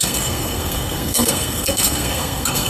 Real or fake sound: fake